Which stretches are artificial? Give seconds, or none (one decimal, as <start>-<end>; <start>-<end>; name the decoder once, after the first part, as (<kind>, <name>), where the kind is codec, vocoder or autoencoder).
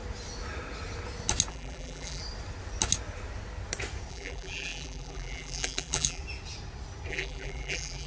1.5-2.2 (vocoder, BigVGAN v2); 4.1-6.2; 7.1-8.1